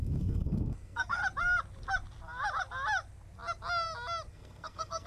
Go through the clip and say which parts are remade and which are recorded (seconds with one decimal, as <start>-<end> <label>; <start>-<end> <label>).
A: 0.0-1.2 remade; 1.2-4.3 recorded; 4.3-5.1 remade